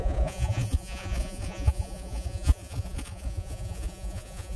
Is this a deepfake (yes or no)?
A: yes